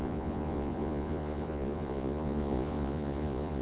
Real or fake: fake